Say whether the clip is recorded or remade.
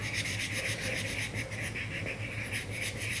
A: recorded